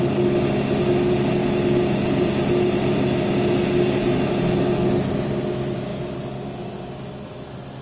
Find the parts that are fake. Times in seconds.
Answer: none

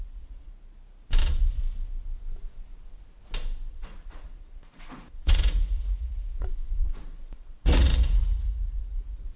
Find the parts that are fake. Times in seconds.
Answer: 0.0-0.5; 1.2-1.6; 3.7-9.4

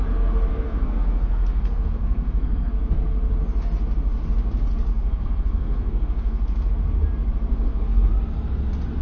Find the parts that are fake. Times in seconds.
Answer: 0.5-2.7; 4.9-6.7; 7.5-8.1

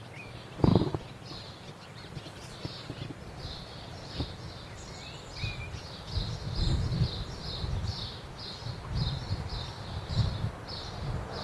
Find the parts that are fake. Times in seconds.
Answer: none

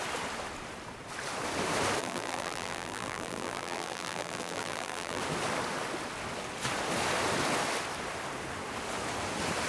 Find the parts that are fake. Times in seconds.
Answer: 2.0-5.2

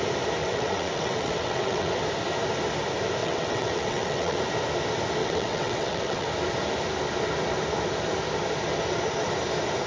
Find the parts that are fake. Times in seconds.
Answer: 0.4-2.0; 3.2-4.4; 5.2-6.3

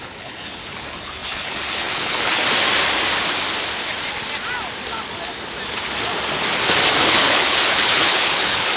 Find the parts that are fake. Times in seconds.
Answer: 0.0-2.4; 7.0-8.8